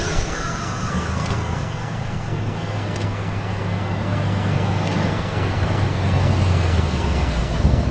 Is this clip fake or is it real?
fake